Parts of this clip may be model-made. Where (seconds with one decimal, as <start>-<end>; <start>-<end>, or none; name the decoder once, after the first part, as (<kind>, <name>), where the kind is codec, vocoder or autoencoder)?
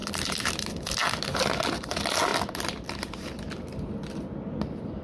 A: none